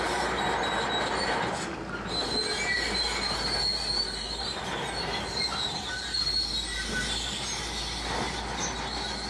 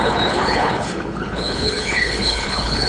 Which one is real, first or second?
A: first